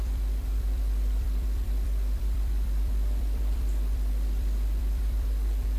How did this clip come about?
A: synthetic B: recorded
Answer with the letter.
A